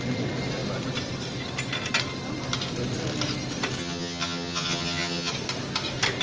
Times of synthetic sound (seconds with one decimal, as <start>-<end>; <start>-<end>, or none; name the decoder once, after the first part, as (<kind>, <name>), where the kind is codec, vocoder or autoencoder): 3.8-5.3 (vocoder, HiFi-GAN)